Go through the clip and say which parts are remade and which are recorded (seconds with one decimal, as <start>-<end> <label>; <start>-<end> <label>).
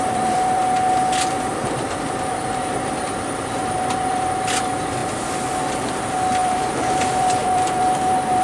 0.0-0.6 remade; 0.6-1.3 recorded; 1.3-5.0 remade; 5.0-5.9 recorded; 5.9-8.4 remade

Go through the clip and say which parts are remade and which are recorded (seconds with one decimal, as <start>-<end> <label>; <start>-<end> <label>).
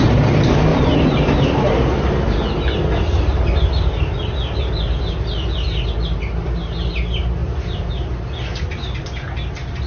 0.0-7.4 recorded; 7.4-7.9 remade; 7.9-9.9 recorded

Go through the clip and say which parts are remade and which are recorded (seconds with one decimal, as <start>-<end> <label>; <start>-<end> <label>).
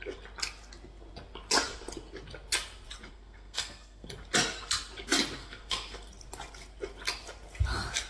0.0-3.1 recorded; 3.1-4.1 remade; 4.1-5.4 recorded; 5.4-6.1 remade; 6.1-8.1 recorded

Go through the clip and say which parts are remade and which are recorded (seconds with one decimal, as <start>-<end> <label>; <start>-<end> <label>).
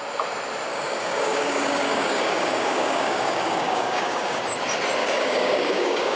0.0-0.7 recorded; 0.7-4.4 remade; 4.4-5.0 recorded; 5.0-6.2 remade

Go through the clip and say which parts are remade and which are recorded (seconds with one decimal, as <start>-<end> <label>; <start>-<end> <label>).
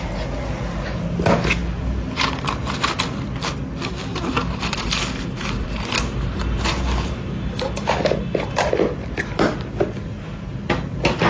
0.0-1.6 recorded; 1.6-2.6 remade; 2.6-4.1 recorded; 4.1-8.2 remade; 8.2-11.3 recorded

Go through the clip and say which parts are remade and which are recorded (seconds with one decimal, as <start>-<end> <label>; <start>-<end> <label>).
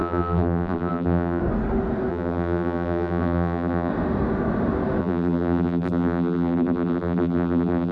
0.0-1.4 remade; 1.4-2.1 recorded; 2.1-3.9 remade; 3.9-5.0 recorded; 5.0-7.9 remade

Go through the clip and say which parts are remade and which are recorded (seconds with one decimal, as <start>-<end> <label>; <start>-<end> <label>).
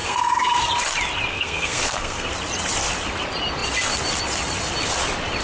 0.0-0.7 remade; 0.7-1.3 recorded; 1.3-2.3 remade; 2.3-5.4 recorded